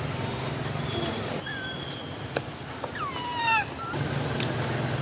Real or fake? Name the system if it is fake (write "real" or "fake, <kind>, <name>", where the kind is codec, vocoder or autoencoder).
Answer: real